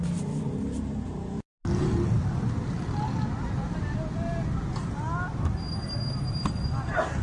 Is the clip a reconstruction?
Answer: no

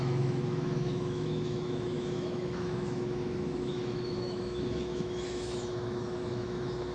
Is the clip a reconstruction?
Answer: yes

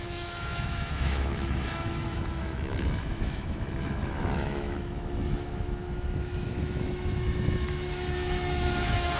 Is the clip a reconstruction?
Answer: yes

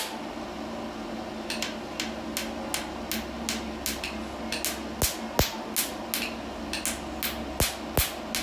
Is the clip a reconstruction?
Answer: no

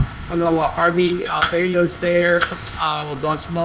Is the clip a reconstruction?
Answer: yes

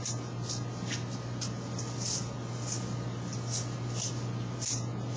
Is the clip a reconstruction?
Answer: no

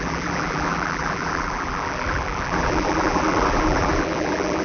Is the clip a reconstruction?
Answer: yes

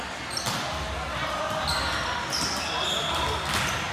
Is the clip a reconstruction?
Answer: no